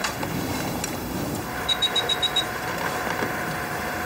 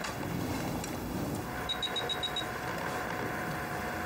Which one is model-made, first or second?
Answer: first